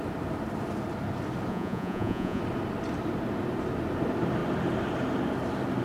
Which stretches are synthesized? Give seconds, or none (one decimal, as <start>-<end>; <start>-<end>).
1.5-2.4